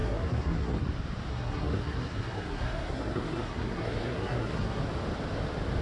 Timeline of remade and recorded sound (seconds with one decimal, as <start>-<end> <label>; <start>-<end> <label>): 0.0-0.9 remade; 0.9-1.3 recorded; 1.3-4.8 remade; 4.8-5.8 recorded